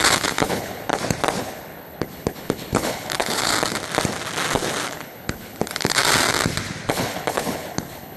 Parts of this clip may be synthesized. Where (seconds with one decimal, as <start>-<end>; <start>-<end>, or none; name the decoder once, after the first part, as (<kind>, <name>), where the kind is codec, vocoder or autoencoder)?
0.0-0.9 (codec, HILCodec); 1.4-3.5; 4.9-6.0; 6.9-8.2

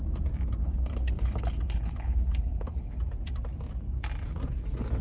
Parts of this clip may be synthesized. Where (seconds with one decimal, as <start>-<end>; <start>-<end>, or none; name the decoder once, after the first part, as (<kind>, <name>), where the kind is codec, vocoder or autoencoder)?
0.6-2.9 (codec, HILCodec)